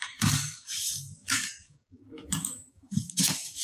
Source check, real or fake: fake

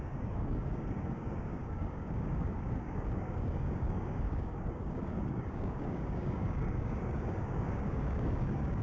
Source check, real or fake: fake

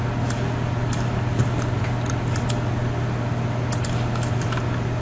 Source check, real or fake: real